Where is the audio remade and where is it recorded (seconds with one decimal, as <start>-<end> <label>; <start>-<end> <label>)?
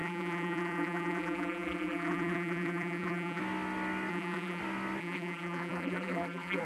0.0-3.4 remade; 3.4-4.1 recorded; 4.1-4.6 remade; 4.6-5.0 recorded; 5.0-6.6 remade